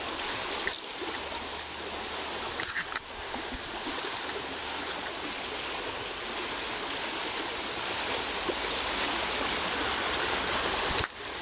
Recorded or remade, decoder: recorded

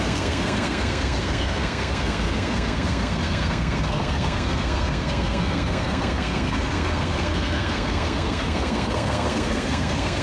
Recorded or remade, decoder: remade, codec, SNAC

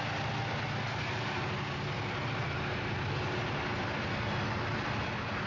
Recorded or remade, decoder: recorded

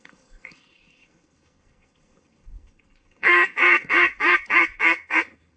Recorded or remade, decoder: remade, codec, SNAC